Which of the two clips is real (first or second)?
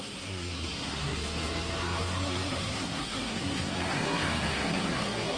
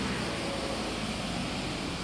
second